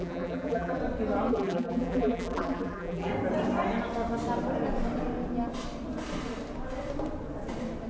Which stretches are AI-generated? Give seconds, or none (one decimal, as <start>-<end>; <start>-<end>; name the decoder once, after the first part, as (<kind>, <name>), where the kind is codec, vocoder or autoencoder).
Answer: 0.0-0.8 (vocoder, BigVGAN v2); 1.3-3.1